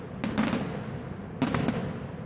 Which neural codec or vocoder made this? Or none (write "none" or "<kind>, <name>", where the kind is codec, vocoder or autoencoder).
none